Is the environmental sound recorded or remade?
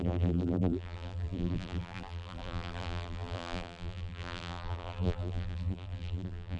remade